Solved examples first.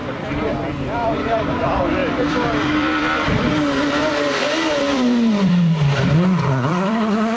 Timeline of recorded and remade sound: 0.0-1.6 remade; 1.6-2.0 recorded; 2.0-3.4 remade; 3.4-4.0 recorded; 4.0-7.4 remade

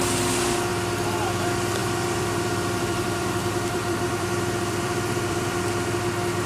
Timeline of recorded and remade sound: 0.0-1.8 recorded; 1.8-5.7 remade; 5.7-6.5 recorded

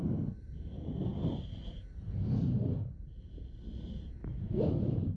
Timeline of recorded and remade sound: 0.0-4.2 recorded; 4.2-4.7 remade; 4.7-5.2 recorded

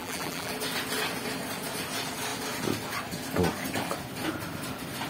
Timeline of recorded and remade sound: 0.0-0.5 remade; 0.5-5.1 recorded

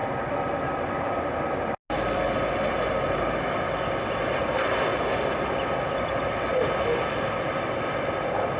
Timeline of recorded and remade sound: 0.0-8.6 recorded

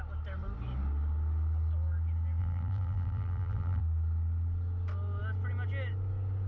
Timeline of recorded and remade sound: 0.0-2.4 recorded; 2.4-3.8 remade; 3.8-6.5 recorded